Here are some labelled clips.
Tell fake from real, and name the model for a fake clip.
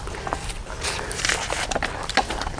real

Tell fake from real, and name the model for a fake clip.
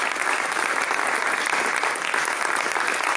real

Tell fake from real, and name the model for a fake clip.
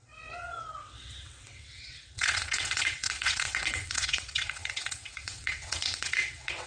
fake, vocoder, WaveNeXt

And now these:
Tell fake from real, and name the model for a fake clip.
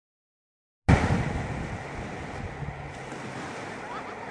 real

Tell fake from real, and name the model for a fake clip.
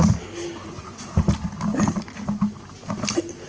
real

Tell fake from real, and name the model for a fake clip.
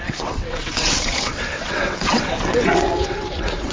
fake, vocoder, WaveNeXt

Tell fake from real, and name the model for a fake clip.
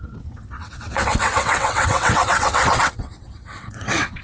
fake, vocoder, WaveNeXt